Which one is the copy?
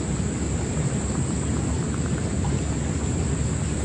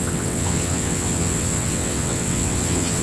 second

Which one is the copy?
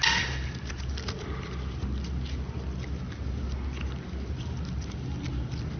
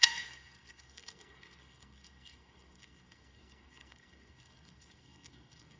second